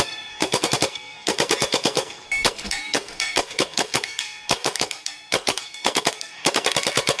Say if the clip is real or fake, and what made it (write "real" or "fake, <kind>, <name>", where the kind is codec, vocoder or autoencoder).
fake, codec, SNAC